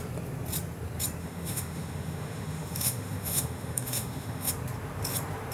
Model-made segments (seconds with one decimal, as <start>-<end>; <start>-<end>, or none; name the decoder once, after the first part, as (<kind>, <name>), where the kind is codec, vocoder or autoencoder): 1.2-4.5 (autoencoder, DAC-VAE)